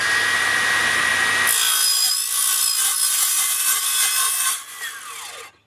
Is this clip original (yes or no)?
yes